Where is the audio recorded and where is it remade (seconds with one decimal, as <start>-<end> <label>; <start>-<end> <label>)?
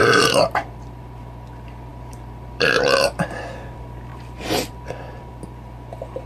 0.0-1.2 remade; 1.2-1.9 recorded; 1.9-3.4 remade; 3.4-4.1 recorded; 4.1-5.3 remade; 5.3-6.3 recorded